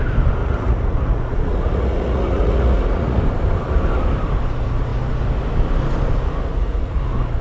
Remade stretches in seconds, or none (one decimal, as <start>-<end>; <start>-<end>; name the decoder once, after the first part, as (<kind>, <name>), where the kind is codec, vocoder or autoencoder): 0.4-3.2 (vocoder, Vocos); 6.5-7.0